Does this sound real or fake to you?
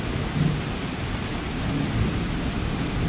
real